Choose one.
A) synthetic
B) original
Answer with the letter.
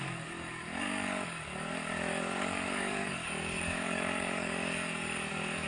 A